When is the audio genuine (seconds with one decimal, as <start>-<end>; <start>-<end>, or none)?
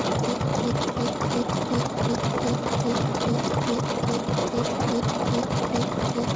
0.0-4.4; 4.9-6.4